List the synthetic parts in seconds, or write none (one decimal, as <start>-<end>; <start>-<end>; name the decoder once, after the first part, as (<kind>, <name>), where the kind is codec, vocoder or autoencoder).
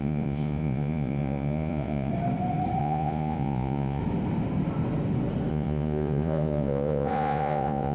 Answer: 0.0-2.1 (vocoder, Vocos); 2.8-4.0; 5.5-7.9